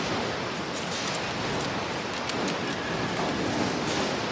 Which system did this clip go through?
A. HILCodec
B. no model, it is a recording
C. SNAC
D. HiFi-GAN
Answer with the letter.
B